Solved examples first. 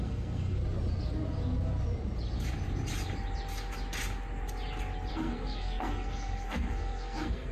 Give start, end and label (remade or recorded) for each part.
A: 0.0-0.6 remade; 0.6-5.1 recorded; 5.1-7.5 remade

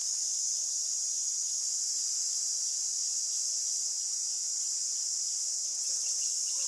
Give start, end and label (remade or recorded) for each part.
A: 0.0-5.6 recorded; 5.6-6.3 remade; 6.3-6.7 recorded

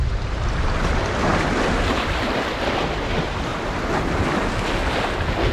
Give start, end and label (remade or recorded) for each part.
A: 0.0-0.9 remade; 0.9-3.5 recorded; 3.5-4.2 remade; 4.2-5.5 recorded